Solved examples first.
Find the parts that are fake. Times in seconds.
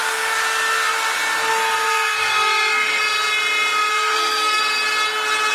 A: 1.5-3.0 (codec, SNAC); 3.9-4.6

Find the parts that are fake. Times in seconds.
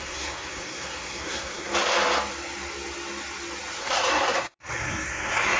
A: 0.0-1.7 (codec, SNAC); 3.8-5.6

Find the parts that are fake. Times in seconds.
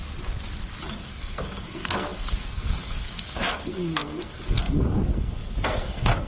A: 1.0-6.3 (codec, SNAC)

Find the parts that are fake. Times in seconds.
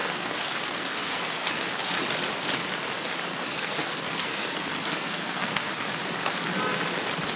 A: 0.0-1.7 (codec, SNAC); 3.3-5.7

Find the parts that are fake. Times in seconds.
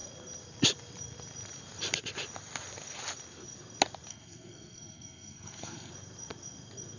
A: 4.1-5.9 (codec, SNAC)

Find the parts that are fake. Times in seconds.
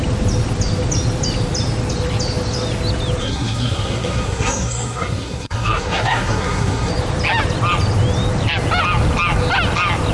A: 3.2-6.9 (codec, SNAC)